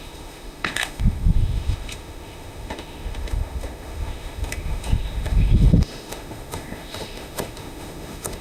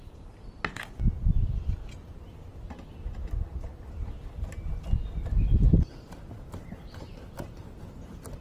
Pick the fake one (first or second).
first